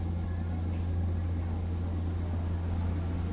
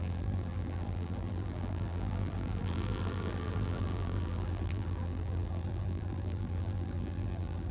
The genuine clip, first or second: first